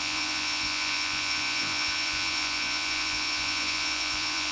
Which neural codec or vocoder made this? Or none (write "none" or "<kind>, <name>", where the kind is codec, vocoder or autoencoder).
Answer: vocoder, Vocos